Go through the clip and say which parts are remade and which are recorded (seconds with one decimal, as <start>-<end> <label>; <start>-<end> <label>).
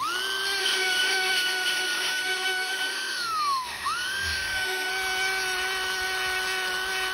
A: 0.0-0.6 recorded; 0.6-4.9 remade; 4.9-7.1 recorded